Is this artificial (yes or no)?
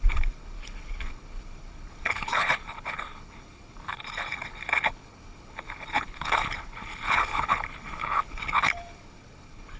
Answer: yes